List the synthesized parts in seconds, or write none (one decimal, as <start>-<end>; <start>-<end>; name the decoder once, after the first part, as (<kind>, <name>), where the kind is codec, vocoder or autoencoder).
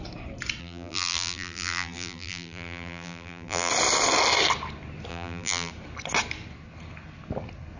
0.6-3.7 (vocoder, BigVGAN v2); 5.1-5.7